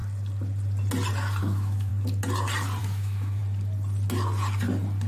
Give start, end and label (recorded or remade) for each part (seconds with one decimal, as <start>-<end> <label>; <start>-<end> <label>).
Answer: 0.0-1.4 recorded; 1.4-1.9 remade; 1.9-2.8 recorded; 2.8-3.4 remade; 3.4-5.1 recorded